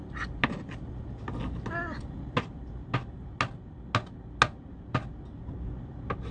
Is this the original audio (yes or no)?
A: yes